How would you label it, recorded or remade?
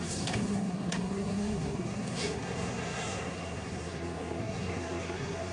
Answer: remade